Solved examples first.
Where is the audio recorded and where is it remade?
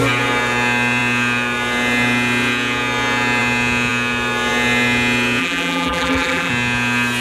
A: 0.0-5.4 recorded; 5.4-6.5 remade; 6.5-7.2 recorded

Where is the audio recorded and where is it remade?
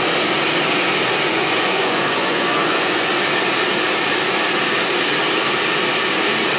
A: 0.0-1.3 recorded; 1.3-3.1 remade; 3.1-6.6 recorded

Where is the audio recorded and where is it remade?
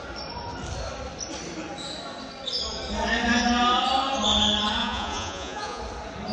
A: 0.0-4.8 recorded; 4.8-5.8 remade; 5.8-6.3 recorded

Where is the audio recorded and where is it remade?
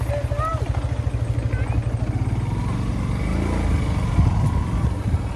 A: 0.0-5.4 recorded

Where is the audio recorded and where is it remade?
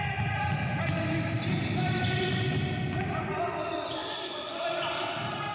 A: 0.0-5.5 recorded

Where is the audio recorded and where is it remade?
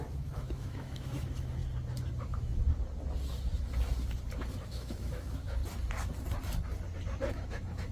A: 0.0-1.6 remade; 1.6-2.2 recorded; 2.2-2.6 remade; 2.6-4.6 recorded; 4.6-5.6 remade; 5.6-7.3 recorded; 7.3-7.9 remade